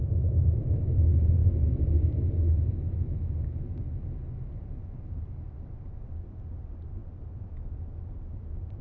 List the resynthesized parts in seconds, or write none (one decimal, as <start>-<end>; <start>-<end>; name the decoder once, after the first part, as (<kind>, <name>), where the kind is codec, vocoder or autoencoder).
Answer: none